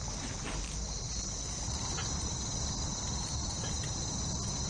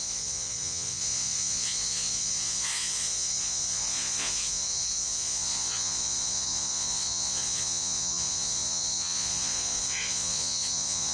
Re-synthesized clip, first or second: second